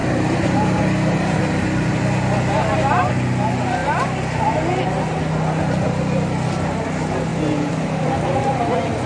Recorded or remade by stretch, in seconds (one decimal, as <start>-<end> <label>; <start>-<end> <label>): 0.0-1.4 remade; 1.4-7.3 recorded; 7.3-8.7 remade; 8.7-9.1 recorded